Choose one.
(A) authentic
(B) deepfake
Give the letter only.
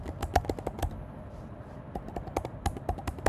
A